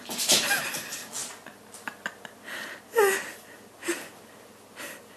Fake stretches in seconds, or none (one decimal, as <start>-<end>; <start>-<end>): none